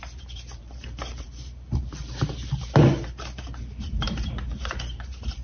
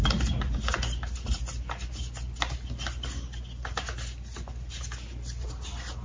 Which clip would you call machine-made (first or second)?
first